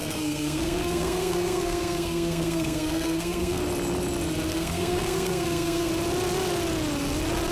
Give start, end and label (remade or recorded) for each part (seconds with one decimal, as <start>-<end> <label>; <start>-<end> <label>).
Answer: 0.0-3.6 remade; 3.6-4.5 recorded; 4.5-5.9 remade; 5.9-7.5 recorded